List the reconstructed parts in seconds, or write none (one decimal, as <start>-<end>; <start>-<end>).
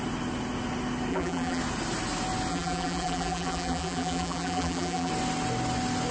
1.1-1.6; 2.5-5.1